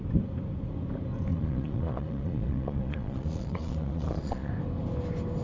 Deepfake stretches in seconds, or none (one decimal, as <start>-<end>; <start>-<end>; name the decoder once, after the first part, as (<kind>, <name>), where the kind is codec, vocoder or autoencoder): 1.3-4.5 (vocoder, Vocos)